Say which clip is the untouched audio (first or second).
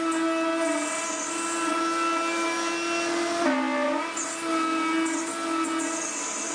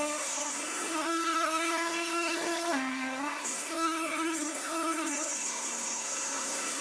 first